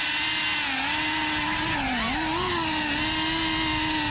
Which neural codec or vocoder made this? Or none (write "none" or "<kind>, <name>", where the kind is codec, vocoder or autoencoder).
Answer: none